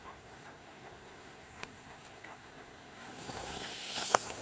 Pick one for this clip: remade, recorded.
remade